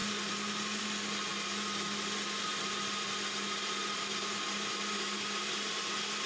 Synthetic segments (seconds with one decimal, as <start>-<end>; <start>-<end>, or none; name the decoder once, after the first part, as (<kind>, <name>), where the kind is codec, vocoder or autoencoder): none